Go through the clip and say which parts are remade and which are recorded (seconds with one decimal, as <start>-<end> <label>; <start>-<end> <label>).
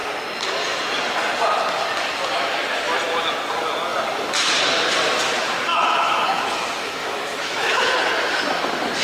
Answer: 0.0-5.7 recorded; 5.7-6.4 remade; 6.4-7.0 recorded; 7.0-7.9 remade; 7.9-9.0 recorded